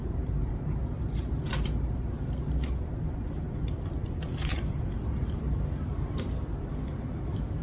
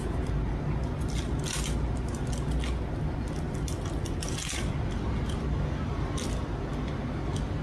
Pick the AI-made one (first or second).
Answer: first